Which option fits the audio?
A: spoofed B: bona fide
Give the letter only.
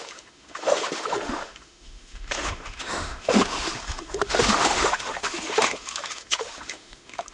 A